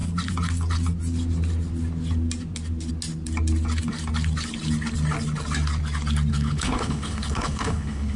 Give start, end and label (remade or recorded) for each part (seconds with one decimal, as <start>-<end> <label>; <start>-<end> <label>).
0.0-6.3 recorded; 6.3-8.2 remade